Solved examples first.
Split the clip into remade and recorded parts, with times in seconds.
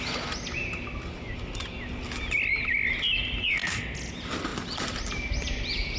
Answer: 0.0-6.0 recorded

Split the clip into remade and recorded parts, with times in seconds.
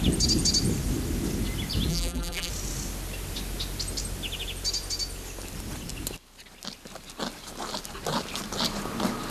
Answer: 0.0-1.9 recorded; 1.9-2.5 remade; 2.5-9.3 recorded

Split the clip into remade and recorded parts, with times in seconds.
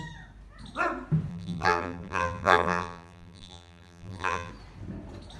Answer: 0.0-1.3 recorded; 1.3-4.5 remade; 4.5-5.4 recorded